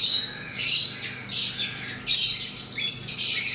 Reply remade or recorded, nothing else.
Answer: recorded